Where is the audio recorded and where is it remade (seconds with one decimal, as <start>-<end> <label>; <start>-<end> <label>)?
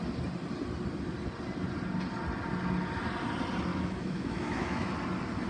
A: 0.0-3.7 recorded; 3.7-4.9 remade; 4.9-5.5 recorded